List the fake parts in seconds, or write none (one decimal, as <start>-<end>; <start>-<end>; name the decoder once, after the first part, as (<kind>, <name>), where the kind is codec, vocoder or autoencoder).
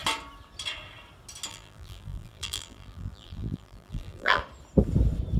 1.5-4.4 (vocoder, BigVGAN v2)